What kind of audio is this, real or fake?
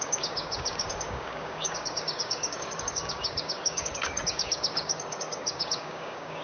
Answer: fake